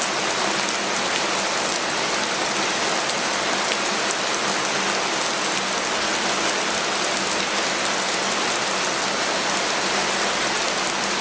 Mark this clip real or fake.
real